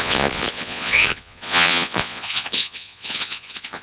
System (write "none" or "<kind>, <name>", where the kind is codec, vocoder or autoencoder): vocoder, Vocos